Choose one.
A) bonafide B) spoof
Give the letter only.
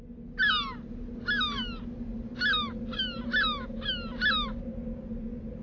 A